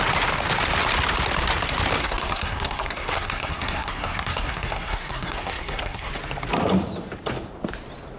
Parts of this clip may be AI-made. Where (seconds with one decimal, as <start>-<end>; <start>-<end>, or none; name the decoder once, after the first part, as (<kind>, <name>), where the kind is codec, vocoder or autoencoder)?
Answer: 2.0-6.1 (codec, SNAC)